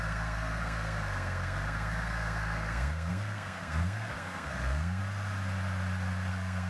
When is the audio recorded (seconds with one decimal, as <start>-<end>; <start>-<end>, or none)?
5.0-6.3